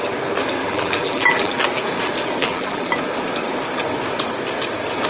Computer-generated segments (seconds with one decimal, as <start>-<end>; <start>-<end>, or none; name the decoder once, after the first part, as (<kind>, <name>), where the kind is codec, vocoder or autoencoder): 0.6-1.6 (vocoder, BigVGAN v2); 2.4-2.9